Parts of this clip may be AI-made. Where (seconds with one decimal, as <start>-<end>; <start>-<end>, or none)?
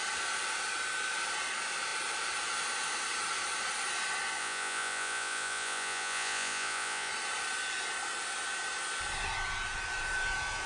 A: 4.4-7.1